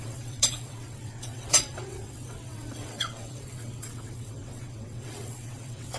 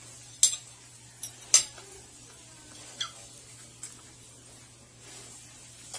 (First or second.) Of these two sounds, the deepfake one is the first